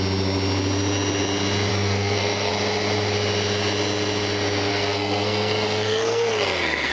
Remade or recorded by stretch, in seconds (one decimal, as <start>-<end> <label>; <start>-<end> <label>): 0.0-1.7 recorded; 1.7-2.5 remade; 2.5-4.7 recorded; 4.7-6.9 remade